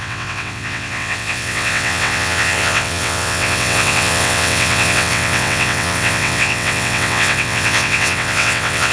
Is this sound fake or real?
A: fake